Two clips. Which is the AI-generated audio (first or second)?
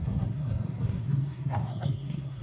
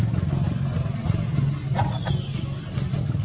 first